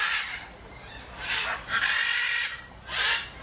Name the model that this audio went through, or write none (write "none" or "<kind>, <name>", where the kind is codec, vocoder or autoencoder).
vocoder, BigVGAN v2